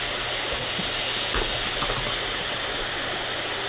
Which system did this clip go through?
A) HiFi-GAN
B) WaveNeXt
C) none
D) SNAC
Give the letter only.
C